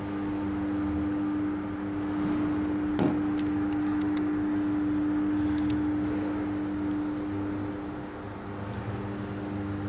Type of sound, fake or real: real